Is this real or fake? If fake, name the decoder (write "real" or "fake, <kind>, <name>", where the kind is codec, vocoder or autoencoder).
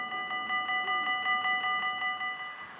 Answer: real